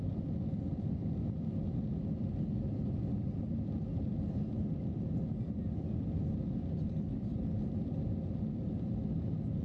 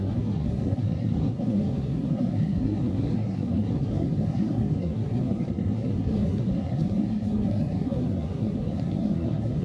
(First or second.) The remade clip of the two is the second